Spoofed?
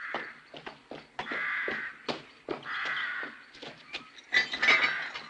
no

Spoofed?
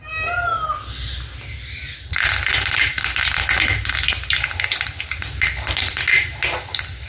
no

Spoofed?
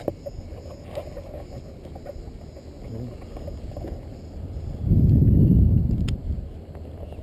no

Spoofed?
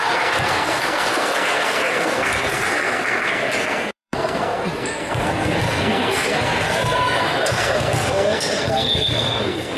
yes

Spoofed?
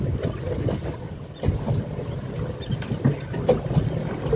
no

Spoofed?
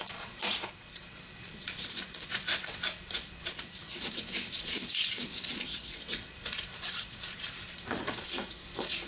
yes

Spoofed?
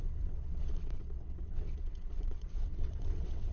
yes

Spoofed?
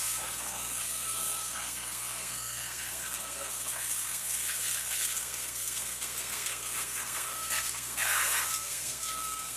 yes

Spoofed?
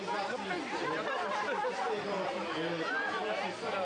no